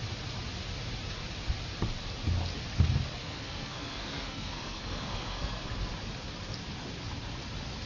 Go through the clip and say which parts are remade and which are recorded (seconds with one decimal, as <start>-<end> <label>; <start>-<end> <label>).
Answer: 0.0-3.2 recorded; 3.2-5.6 remade; 5.6-7.9 recorded